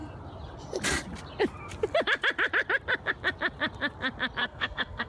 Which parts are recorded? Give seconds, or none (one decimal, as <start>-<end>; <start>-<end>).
0.0-4.4